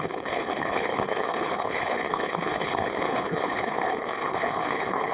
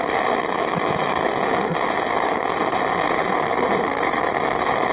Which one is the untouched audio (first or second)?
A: second